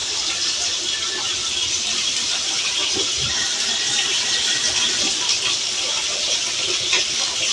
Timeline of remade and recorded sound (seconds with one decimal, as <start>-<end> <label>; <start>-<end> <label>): 0.0-0.6 remade; 0.6-1.6 recorded; 1.6-2.3 remade; 2.3-7.5 recorded